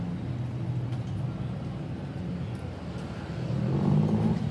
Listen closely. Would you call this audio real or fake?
real